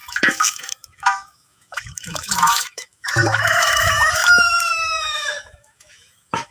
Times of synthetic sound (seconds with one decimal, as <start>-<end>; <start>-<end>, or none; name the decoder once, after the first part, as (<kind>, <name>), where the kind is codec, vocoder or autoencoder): 0.0-6.5 (autoencoder, DAC-VAE)